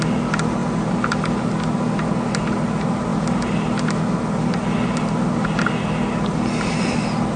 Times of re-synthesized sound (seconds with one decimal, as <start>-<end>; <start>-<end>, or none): none